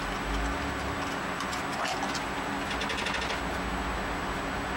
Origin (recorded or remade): recorded